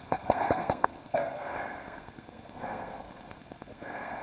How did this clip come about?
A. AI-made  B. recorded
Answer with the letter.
A